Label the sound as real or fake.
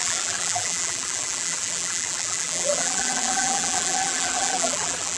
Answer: fake